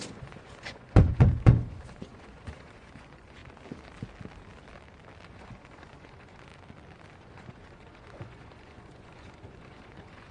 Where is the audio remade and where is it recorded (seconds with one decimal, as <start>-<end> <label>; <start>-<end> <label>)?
0.0-3.4 remade; 3.4-5.3 recorded; 5.3-6.5 remade; 6.5-7.2 recorded; 7.2-10.3 remade